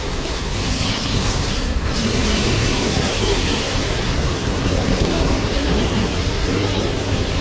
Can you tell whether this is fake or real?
fake